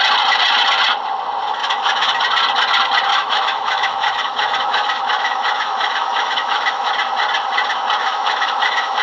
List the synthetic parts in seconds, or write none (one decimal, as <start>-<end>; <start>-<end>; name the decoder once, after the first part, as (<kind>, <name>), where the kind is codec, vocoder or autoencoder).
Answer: 1.6-2.2 (autoencoder, DAC-VAE); 3.1-6.9; 8.0-9.0